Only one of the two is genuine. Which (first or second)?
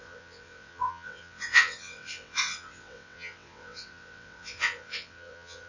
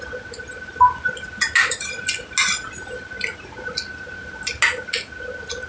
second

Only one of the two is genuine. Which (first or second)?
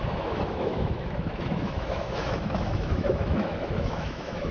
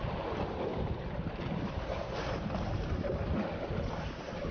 second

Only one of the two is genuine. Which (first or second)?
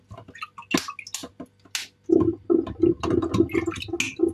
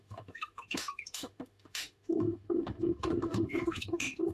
first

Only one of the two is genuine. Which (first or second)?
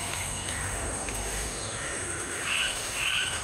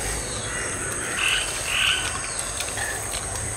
second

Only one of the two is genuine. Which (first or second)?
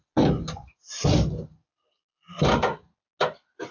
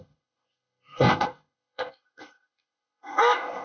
first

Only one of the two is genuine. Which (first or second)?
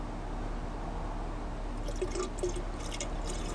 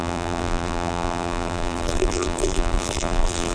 first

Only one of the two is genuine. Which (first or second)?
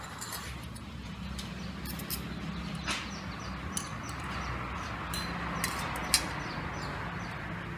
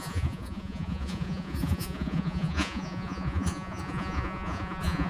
first